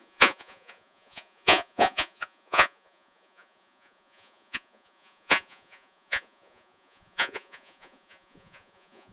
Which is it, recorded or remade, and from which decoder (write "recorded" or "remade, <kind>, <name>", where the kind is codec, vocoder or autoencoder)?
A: remade, vocoder, Vocos